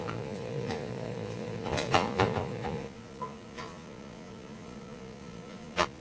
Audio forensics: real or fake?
fake